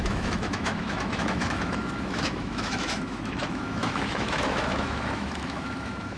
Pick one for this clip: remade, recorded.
remade